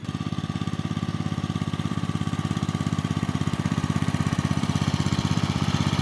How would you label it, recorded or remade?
remade